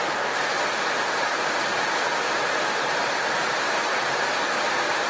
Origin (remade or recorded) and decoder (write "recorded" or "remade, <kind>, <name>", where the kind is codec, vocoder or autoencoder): recorded